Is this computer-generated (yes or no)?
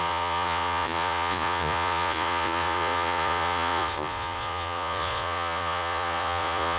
yes